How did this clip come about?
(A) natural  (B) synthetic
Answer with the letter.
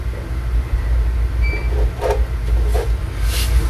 A